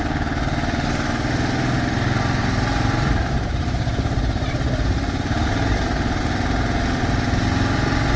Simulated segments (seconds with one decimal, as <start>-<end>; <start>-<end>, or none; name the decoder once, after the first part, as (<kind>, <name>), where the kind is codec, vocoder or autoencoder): 2.4-6.2 (vocoder, BigVGAN v2)

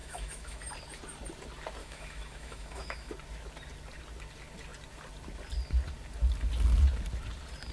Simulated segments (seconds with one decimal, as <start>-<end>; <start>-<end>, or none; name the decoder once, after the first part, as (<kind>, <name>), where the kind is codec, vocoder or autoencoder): 0.0-0.6 (autoencoder, DAC-VAE); 1.8-3.1

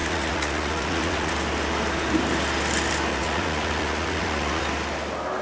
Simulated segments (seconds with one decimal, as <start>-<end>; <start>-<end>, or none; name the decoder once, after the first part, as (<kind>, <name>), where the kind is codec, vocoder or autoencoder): 0.0-1.3 (vocoder, Vocos); 3.1-4.6

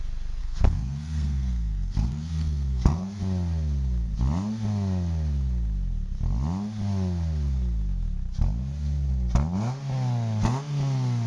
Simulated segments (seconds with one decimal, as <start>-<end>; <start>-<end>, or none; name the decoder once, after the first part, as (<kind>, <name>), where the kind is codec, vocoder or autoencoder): 0.4-3.2 (codec, SNAC)

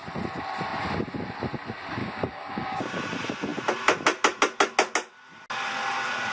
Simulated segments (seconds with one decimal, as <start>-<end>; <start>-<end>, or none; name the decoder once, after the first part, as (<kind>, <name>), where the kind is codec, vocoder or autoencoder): 2.0-3.0 (codec, DAC)

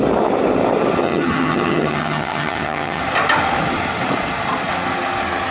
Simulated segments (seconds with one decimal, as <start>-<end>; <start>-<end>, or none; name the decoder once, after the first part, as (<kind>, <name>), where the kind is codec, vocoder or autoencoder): 1.0-3.0 (vocoder, HiFi-GAN)

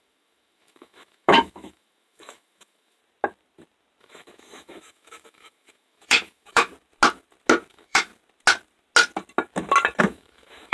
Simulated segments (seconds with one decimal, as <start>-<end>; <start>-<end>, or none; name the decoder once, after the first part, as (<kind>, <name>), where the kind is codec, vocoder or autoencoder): 0.0-3.0 (autoencoder, DAC-VAE); 4.0-6.7; 7.7-8.1; 10.0-10.7